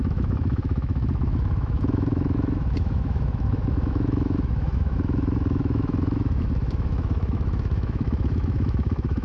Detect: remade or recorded remade